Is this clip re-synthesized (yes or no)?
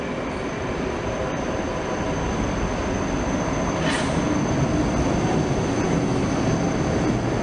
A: no